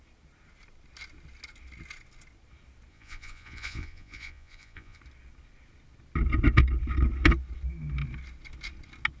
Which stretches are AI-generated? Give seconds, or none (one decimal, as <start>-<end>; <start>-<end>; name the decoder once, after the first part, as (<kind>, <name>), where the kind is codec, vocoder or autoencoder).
2.9-5.0 (vocoder, Vocos)